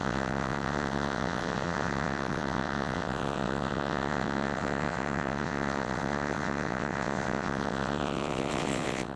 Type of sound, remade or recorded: remade